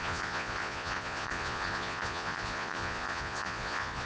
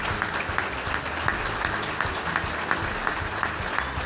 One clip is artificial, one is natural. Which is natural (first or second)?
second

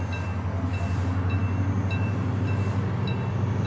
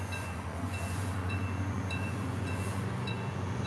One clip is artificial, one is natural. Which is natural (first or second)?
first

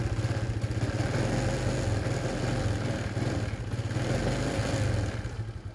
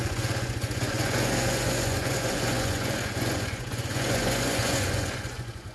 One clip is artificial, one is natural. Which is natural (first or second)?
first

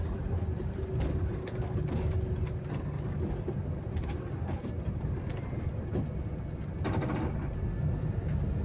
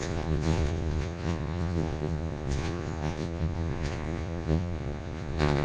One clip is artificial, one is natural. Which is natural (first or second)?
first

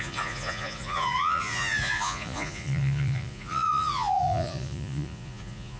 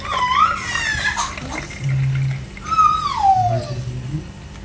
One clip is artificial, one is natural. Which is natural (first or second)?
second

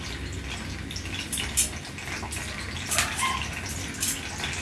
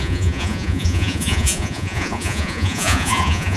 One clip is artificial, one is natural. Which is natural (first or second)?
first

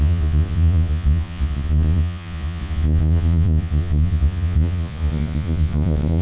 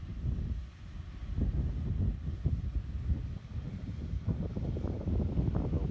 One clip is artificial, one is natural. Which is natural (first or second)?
second